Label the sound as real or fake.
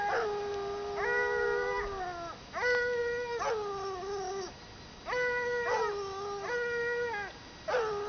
real